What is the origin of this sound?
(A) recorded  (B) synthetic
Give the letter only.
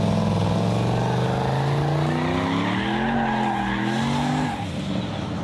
A